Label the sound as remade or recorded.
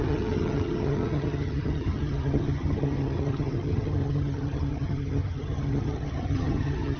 remade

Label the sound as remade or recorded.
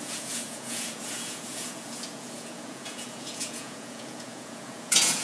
remade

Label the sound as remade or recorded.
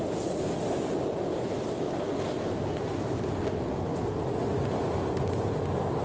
recorded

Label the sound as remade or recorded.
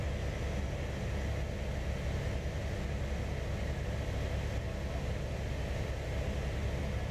recorded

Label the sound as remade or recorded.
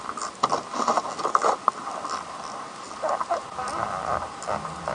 recorded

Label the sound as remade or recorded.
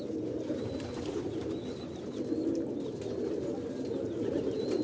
recorded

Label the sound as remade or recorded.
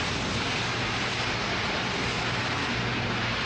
recorded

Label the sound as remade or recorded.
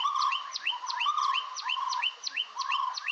remade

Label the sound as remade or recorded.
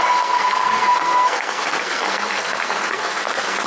remade